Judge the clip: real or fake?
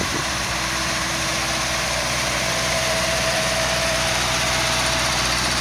fake